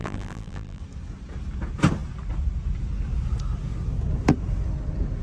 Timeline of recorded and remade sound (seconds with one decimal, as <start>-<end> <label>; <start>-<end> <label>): 0.0-0.8 remade; 0.8-5.2 recorded